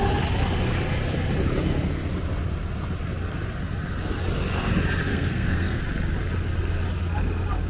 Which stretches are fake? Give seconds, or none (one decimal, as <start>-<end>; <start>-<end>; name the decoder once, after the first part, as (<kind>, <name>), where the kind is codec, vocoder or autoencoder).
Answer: 5.1-5.8 (codec, SNAC)